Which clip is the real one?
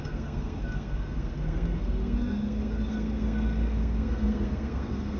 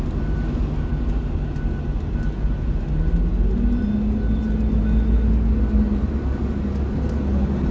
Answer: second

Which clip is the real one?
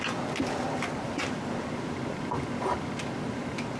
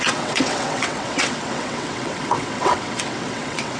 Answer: first